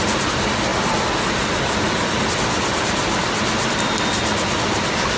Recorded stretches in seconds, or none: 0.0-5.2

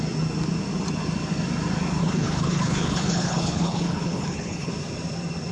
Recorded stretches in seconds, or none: 0.0-2.0; 4.7-5.5

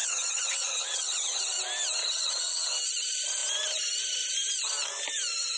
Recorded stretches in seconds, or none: 1.4-2.0; 2.7-5.6

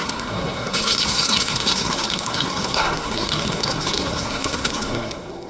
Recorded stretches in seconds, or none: none

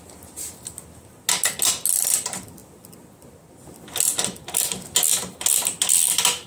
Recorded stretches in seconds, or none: 0.0-6.5

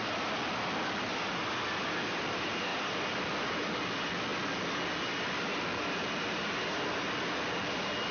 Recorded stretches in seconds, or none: 0.0-2.7; 3.7-8.1